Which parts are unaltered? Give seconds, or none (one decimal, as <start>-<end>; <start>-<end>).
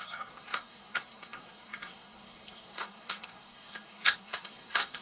none